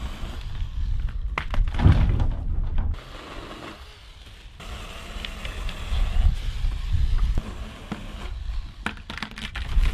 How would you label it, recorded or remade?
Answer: recorded